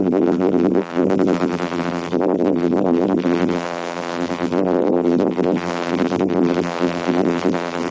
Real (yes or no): no